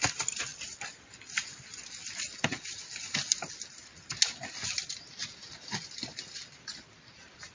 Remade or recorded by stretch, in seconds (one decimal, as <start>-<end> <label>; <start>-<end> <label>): 0.0-7.5 recorded